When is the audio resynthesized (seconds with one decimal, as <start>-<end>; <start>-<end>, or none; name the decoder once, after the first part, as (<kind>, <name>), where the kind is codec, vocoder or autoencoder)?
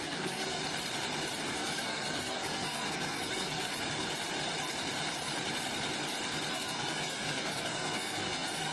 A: 0.0-0.6 (codec, SNAC); 1.4-3.7; 6.5-8.7